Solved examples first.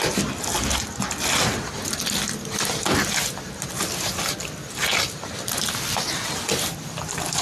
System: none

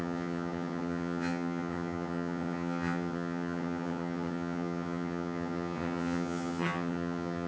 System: vocoder, HiFi-GAN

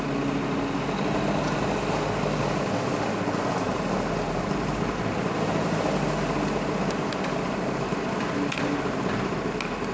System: none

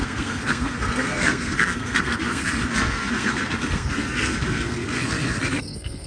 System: codec, SNAC